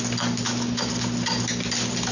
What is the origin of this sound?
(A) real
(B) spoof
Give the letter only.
A